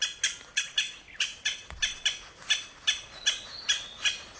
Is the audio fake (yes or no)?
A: no